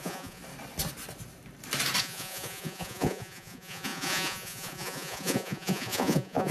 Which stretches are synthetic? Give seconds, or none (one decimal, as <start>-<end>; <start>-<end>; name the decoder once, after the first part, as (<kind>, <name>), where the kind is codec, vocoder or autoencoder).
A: 0.0-0.4 (vocoder, Vocos); 2.0-6.5